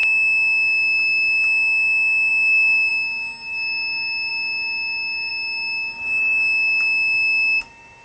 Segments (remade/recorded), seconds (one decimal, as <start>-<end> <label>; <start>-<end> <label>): 0.0-8.0 recorded